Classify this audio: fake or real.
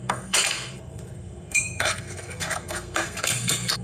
fake